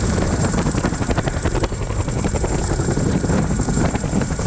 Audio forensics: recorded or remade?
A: remade